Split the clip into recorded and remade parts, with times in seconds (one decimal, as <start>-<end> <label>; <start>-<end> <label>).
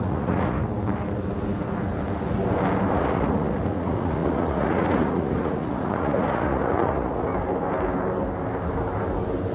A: 0.0-0.7 remade; 0.7-2.9 recorded; 2.9-7.3 remade; 7.3-9.5 recorded